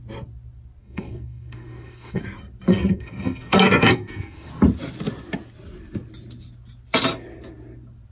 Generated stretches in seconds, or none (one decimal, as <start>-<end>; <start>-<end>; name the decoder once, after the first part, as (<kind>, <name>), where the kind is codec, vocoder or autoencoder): 0.8-2.2 (codec, SNAC); 2.7-4.5